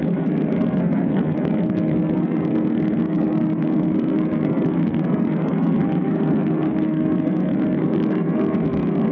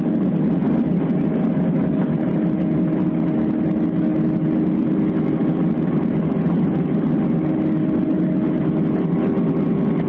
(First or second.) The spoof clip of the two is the first